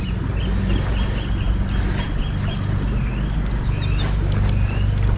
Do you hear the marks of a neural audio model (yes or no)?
no